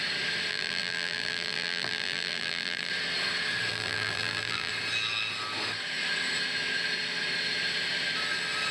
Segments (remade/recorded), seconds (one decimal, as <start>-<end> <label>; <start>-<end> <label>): 0.0-0.5 recorded; 0.5-2.9 remade; 2.9-3.7 recorded; 3.7-4.7 remade; 4.7-8.7 recorded